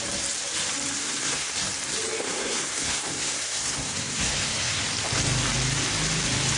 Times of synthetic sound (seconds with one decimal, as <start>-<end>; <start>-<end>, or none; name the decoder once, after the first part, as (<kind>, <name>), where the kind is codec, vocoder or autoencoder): 1.0-1.5 (codec, SNAC); 2.2-4.8